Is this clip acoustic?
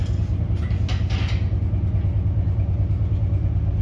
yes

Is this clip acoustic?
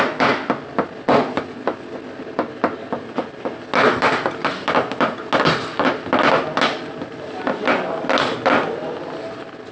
yes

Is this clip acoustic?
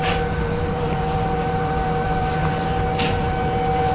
no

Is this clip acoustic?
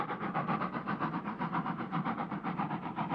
no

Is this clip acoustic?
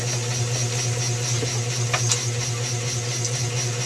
yes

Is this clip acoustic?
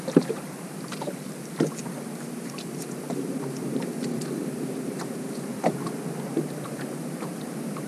no